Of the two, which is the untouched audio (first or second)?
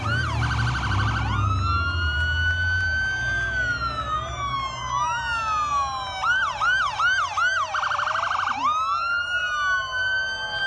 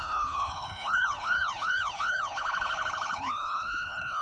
first